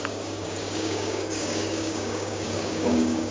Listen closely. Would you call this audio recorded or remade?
remade